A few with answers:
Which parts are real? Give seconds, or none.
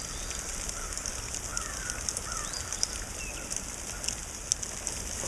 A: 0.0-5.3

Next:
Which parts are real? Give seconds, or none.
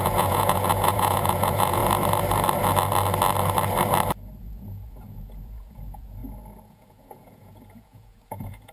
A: 1.8-4.4; 6.2-6.7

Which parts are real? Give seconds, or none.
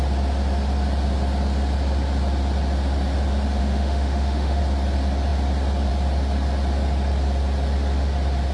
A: 0.0-3.6; 4.6-8.5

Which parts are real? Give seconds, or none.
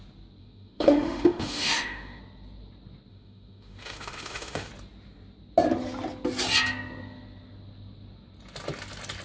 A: 0.0-0.4; 2.2-3.1; 4.7-9.2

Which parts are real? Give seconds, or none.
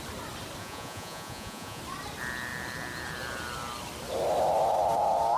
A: 0.0-0.6; 1.8-5.4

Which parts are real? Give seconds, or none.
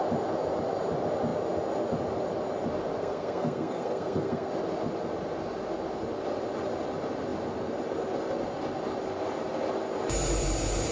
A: 0.0-3.0; 4.5-10.9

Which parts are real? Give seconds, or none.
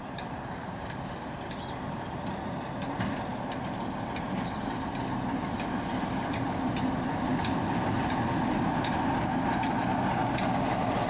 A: 0.0-11.1